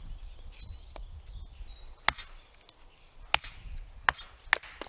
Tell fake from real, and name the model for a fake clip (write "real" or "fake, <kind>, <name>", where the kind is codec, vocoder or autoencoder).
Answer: real